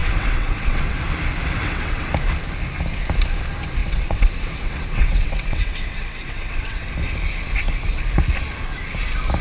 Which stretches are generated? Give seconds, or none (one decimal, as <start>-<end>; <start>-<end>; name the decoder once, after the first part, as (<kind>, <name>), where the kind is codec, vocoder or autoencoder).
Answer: 0.0-1.0 (vocoder, WaveNeXt); 1.6-2.1; 3.8-6.9